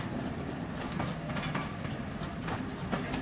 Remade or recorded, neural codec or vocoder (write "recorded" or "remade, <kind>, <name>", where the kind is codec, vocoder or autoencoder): recorded